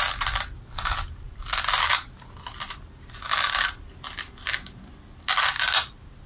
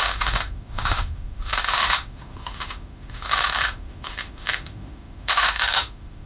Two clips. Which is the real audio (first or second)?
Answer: first